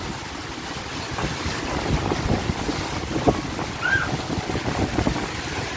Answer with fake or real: real